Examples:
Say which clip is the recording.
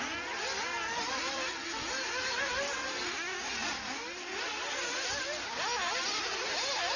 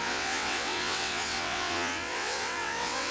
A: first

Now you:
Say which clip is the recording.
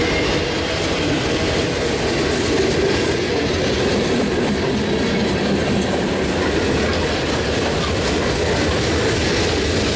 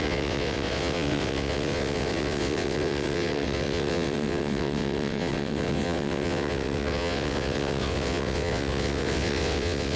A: first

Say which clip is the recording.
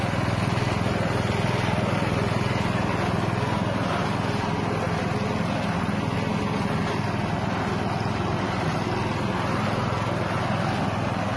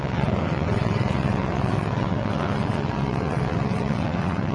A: first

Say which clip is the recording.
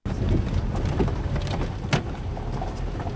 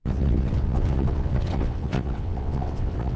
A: first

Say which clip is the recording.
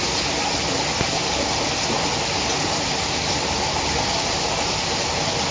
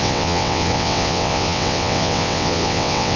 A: first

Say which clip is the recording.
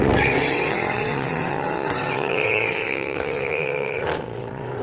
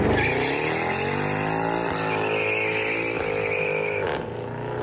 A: second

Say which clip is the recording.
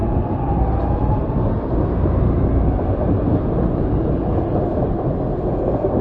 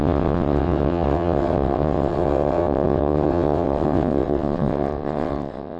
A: first